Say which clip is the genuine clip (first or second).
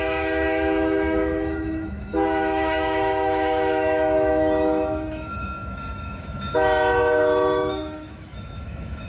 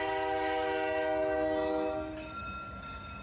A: second